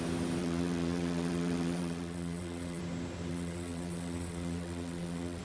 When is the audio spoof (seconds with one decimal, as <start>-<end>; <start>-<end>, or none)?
0.4-2.8; 3.3-5.4